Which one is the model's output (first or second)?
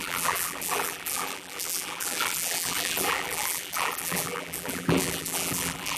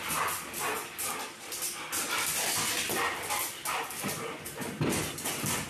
first